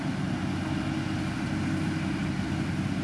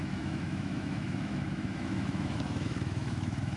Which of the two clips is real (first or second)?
first